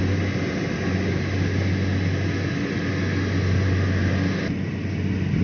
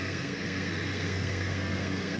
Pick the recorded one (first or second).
first